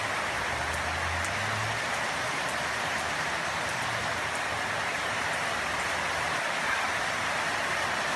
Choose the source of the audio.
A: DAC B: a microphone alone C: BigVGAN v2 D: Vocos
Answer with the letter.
B